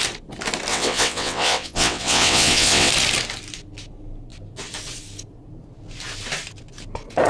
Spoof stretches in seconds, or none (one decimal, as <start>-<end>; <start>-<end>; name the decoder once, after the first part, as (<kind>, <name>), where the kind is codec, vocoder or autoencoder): 0.7-2.9 (vocoder, WaveNeXt)